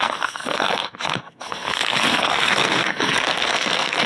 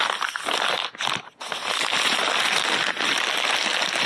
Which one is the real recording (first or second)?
second